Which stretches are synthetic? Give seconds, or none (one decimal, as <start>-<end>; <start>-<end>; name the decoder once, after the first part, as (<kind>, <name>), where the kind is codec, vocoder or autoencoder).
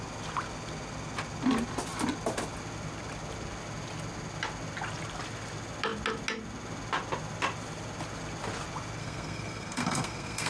9.0-10.5 (codec, SNAC)